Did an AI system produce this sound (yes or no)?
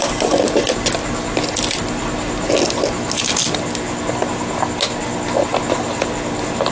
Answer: no